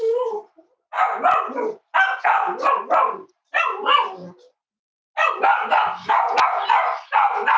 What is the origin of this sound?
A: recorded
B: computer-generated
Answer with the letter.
A